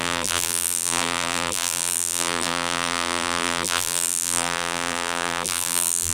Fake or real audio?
fake